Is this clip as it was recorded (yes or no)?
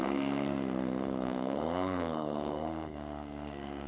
no